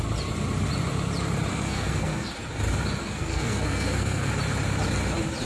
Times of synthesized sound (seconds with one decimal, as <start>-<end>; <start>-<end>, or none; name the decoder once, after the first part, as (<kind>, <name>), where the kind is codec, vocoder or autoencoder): 1.5-2.3 (codec, SNAC); 3.0-4.3